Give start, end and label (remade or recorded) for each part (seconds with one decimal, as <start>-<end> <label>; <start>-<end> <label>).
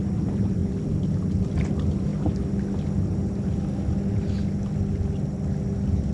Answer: 0.0-6.1 recorded